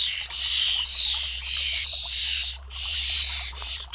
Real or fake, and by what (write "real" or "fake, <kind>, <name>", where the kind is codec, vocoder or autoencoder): fake, vocoder, BigVGAN v2